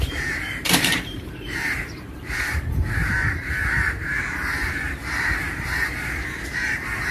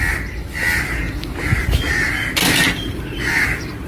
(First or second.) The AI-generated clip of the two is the first